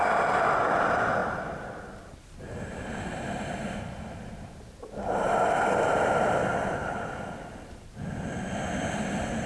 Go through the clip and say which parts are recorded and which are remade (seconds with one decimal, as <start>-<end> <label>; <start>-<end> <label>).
0.0-1.2 recorded; 1.2-2.4 remade; 2.4-6.8 recorded; 6.8-7.9 remade; 7.9-9.5 recorded